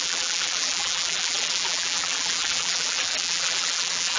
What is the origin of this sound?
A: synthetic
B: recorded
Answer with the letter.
A